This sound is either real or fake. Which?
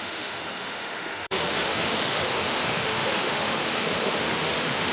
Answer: fake